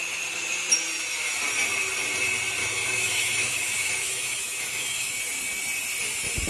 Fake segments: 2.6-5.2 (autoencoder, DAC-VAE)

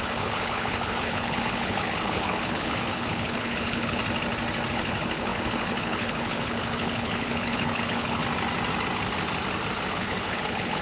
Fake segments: 0.0-4.0 (codec, HILCodec); 4.7-8.2; 9.9-10.8

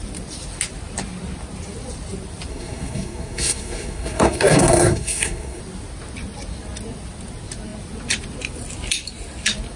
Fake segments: 2.5-5.6 (codec, SNAC)

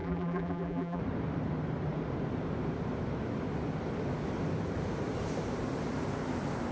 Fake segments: 0.0-1.0 (vocoder, BigVGAN v2)

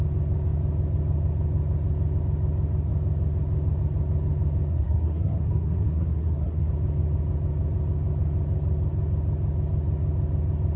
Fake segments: 4.7-6.7 (codec, SNAC)

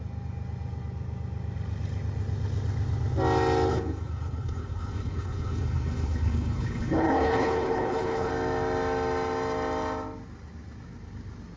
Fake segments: 3.7-8.3 (codec, HILCodec)